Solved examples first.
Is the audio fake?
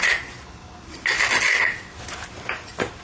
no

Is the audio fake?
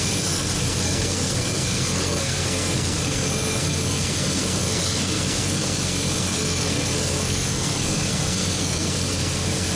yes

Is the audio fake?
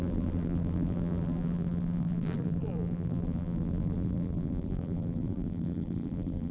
yes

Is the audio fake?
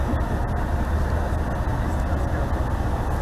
no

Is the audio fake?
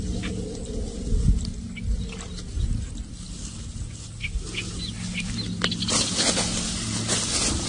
no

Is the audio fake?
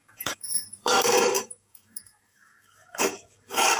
yes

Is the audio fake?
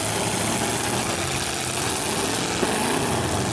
no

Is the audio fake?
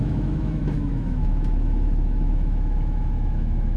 yes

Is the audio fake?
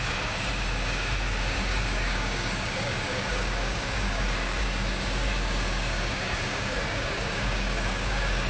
yes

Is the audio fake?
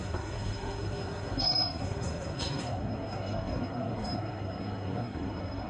yes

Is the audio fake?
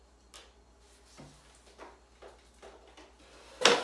no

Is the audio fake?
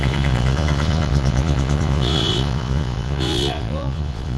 yes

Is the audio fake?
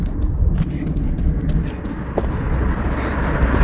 no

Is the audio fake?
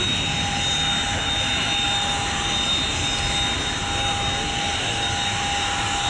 no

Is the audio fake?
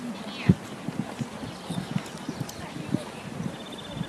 no